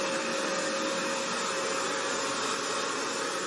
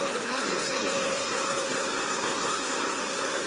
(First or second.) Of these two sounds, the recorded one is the first